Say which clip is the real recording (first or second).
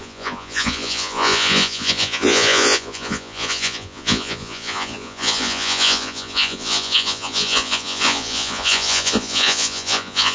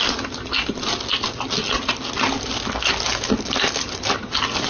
second